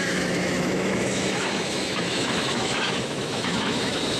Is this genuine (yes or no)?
no